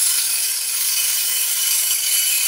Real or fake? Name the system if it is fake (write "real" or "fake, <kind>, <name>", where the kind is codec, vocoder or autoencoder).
fake, codec, DAC